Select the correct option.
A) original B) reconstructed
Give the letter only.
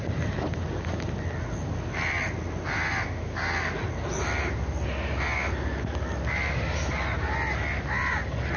A